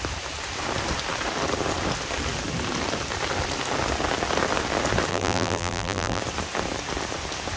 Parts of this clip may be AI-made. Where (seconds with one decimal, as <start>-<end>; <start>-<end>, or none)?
5.1-6.2